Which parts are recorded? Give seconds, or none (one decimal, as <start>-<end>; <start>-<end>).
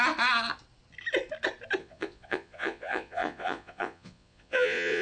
0.0-1.8